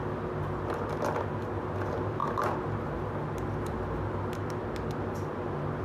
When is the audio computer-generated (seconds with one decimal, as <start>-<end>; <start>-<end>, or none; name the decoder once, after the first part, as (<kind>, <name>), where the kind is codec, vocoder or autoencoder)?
none